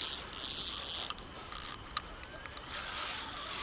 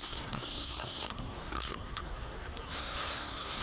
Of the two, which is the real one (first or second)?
first